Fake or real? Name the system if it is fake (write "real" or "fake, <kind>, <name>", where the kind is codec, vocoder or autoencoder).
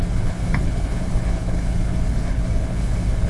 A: fake, codec, HILCodec